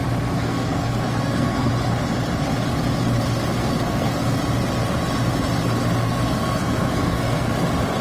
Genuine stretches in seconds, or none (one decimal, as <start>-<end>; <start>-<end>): 0.0-0.4; 1.7-3.6; 4.4-6.0; 7.5-8.0